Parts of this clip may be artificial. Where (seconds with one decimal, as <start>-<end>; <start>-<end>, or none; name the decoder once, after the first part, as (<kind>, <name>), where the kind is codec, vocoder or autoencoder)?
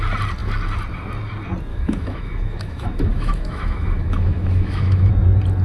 1.7-5.1 (autoencoder, DAC-VAE)